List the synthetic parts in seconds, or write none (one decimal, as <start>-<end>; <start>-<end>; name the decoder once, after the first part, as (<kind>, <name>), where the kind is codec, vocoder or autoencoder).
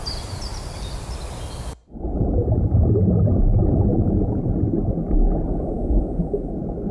0.5-1.1 (vocoder, BigVGAN v2); 3.9-4.5